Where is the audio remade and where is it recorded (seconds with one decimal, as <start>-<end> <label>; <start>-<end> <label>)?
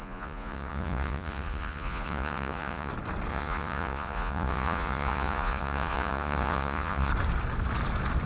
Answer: 0.0-2.9 remade; 2.9-3.3 recorded; 3.3-7.1 remade; 7.1-8.3 recorded